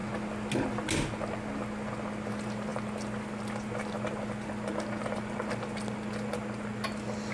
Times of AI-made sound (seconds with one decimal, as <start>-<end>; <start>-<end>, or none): none